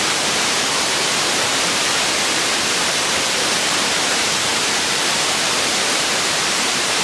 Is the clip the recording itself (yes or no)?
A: no